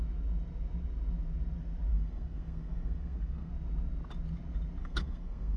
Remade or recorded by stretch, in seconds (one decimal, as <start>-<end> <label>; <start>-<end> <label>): 0.0-1.9 recorded; 1.9-3.5 remade; 3.5-4.8 recorded; 4.8-5.6 remade